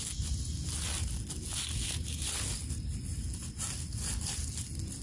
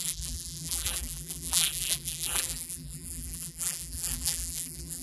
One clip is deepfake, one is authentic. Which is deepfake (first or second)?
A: second